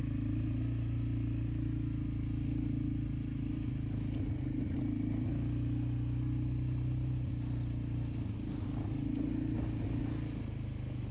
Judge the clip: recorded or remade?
recorded